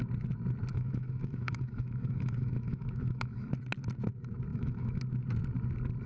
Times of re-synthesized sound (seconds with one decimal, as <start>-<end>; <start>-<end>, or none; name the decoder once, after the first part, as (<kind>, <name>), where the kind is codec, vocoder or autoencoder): 0.7-3.5 (autoencoder, DAC-VAE); 4.5-5.0